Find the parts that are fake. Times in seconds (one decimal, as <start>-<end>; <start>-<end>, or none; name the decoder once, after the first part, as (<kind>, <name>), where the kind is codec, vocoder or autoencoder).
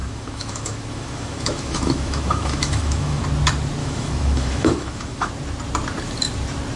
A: 0.0-3.2 (autoencoder, DAC-VAE); 3.8-5.3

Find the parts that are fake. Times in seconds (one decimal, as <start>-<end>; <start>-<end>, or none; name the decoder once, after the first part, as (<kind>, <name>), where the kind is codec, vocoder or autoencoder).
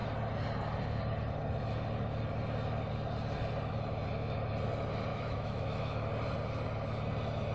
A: 5.1-6.1 (autoencoder, DAC-VAE)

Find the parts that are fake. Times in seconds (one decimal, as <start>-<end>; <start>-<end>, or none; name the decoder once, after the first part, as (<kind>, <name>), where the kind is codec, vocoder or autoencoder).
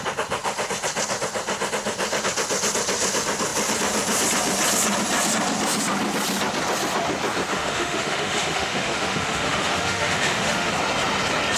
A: 7.5-10.7 (autoencoder, DAC-VAE)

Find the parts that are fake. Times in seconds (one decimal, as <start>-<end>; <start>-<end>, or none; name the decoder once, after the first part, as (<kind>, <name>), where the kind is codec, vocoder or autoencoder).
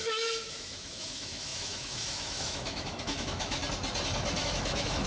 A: 0.0-3.6 (autoencoder, DAC-VAE); 4.4-5.1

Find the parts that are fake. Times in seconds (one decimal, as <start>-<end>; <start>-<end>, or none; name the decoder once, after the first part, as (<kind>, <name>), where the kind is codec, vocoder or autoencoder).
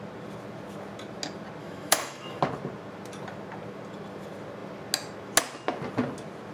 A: 1.6-2.4 (autoencoder, DAC-VAE)